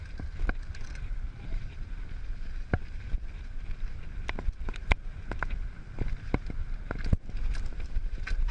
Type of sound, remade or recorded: recorded